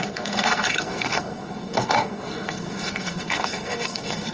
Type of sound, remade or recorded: remade